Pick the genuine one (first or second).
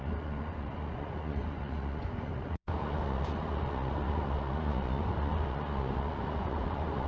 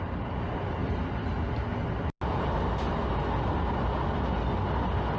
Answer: second